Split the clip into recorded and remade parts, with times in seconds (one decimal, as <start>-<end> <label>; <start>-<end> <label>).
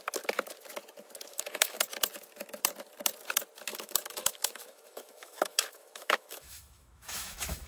0.0-1.3 recorded; 1.3-1.8 remade; 1.8-3.7 recorded; 3.7-7.7 remade